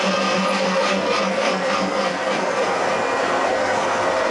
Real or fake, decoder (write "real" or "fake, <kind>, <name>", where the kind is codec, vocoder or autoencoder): fake, codec, SNAC